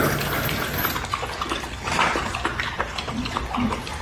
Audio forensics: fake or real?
real